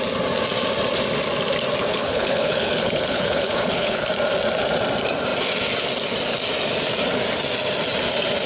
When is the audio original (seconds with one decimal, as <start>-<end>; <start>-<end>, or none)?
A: 0.0-1.9; 4.1-8.5